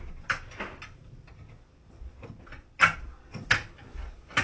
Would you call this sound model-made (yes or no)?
no